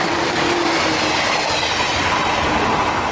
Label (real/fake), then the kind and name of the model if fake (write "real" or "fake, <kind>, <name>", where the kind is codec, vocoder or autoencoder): real